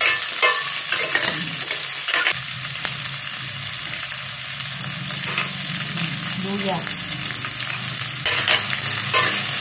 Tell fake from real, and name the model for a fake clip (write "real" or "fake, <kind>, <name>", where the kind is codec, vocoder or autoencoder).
real